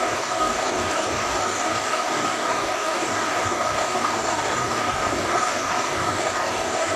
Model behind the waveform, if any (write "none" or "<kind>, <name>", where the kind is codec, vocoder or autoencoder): codec, DAC